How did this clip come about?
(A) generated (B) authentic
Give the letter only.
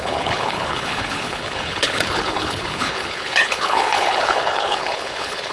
A